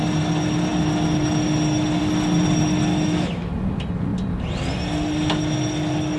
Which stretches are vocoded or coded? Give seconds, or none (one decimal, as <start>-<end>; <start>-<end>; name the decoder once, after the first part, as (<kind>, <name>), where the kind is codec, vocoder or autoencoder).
2.9-3.5 (autoencoder, DAC-VAE)